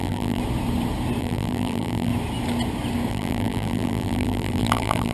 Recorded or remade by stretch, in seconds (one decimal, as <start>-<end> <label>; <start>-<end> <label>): 0.0-0.4 remade; 0.4-1.2 recorded; 1.2-2.1 remade; 2.1-3.1 recorded; 3.1-5.1 remade